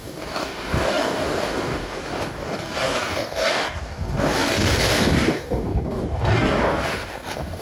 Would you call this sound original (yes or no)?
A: no